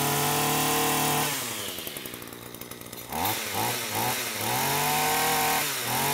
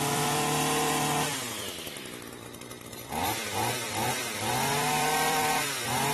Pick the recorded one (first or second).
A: first